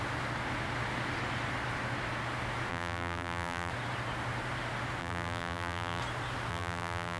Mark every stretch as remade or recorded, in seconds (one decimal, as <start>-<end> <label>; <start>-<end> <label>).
0.0-2.7 recorded; 2.7-3.7 remade; 3.7-5.0 recorded; 5.0-6.0 remade; 6.0-6.5 recorded; 6.5-7.2 remade